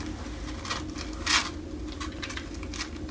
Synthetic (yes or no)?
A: no